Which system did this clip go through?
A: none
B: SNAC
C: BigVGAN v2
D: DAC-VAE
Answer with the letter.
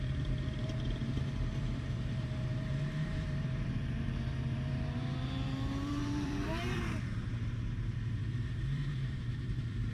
C